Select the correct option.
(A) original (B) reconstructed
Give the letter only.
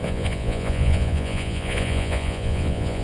B